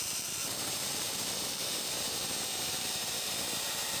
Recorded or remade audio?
remade